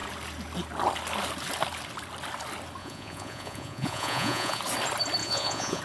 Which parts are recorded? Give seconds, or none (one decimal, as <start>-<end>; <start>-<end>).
0.0-2.8; 4.6-5.2